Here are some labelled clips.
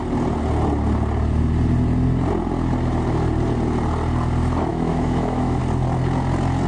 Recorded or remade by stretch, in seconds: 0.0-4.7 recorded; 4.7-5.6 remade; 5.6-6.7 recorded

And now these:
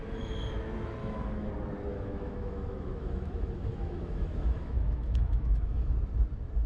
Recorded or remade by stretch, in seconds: 0.0-1.0 recorded; 1.0-1.5 remade; 1.5-1.9 recorded; 1.9-5.9 remade; 5.9-6.7 recorded

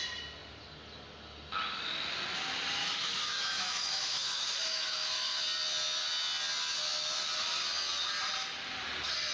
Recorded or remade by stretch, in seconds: 0.0-2.8 recorded; 2.8-5.4 remade; 5.4-9.3 recorded

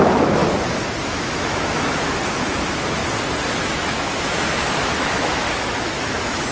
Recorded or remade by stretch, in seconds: 0.0-0.4 remade; 0.4-1.0 recorded; 1.0-3.0 remade; 3.0-3.6 recorded; 3.6-6.5 remade

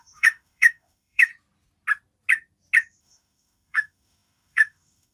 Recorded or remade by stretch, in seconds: 0.0-1.3 remade; 1.3-3.0 recorded; 3.0-5.1 remade

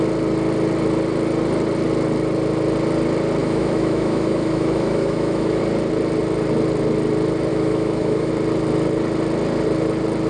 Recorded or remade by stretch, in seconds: 0.0-3.4 recorded; 3.4-5.6 remade; 5.6-7.5 recorded; 7.5-8.3 remade; 8.3-10.3 recorded